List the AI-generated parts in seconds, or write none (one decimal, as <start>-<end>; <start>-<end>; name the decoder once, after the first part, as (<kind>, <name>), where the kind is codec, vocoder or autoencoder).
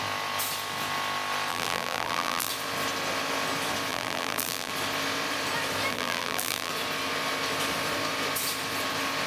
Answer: 1.5-2.5 (vocoder, BigVGAN v2); 3.9-4.7; 5.9-6.7